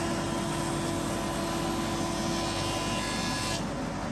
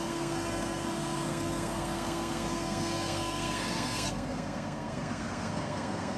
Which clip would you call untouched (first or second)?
first